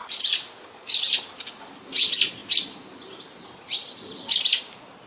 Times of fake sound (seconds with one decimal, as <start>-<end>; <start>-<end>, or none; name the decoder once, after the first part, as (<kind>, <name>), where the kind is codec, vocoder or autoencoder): none